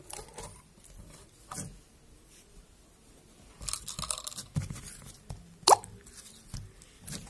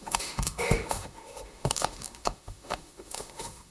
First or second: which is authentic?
first